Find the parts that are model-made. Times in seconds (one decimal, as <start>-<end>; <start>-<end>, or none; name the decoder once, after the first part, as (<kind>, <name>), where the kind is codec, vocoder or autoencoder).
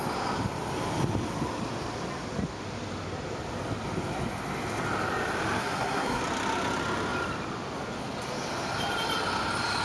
5.6-6.2 (codec, SNAC)